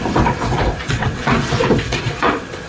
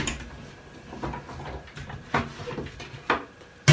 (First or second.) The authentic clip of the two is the second